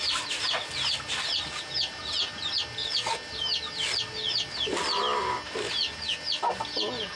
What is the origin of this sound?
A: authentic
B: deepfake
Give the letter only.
A